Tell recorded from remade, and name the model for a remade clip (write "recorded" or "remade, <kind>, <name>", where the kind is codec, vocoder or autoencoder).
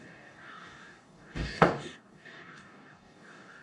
remade, codec, DAC